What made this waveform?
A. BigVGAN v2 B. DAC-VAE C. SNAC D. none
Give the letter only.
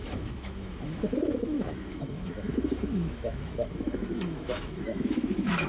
B